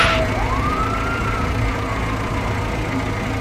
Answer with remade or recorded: recorded